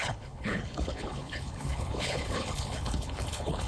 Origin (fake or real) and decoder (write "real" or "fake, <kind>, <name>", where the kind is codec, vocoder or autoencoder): fake, codec, HILCodec